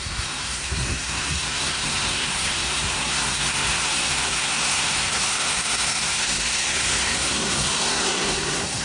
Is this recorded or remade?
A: remade